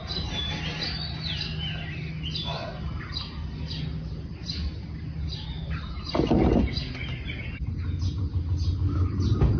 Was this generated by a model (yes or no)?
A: no